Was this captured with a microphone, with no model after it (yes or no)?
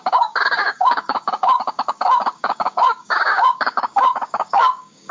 no